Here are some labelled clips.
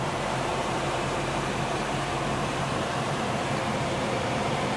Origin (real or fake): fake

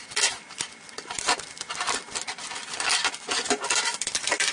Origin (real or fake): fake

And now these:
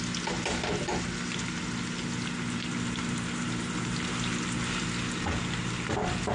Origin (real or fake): real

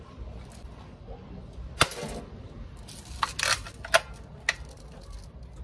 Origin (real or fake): real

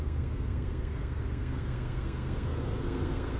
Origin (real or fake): fake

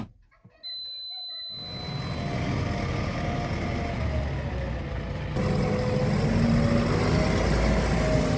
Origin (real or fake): real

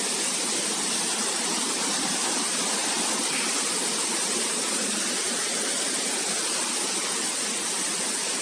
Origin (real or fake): real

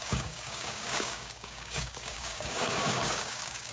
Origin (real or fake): fake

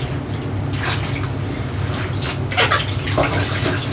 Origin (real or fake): real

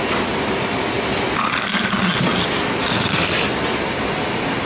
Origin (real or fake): real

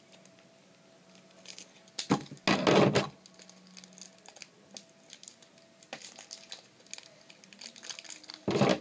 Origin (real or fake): real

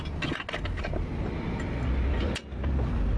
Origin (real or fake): real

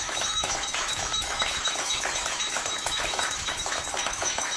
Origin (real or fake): fake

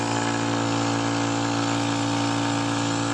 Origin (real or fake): real